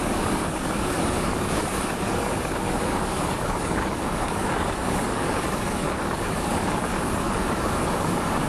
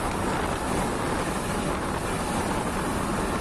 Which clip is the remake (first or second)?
first